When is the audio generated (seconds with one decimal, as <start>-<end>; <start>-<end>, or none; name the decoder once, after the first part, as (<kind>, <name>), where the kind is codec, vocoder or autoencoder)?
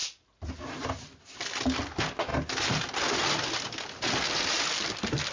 none